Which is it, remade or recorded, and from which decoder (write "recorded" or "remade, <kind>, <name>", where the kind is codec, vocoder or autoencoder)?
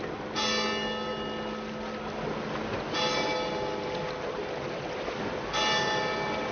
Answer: recorded